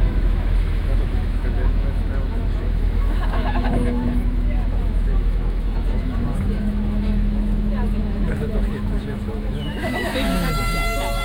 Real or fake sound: fake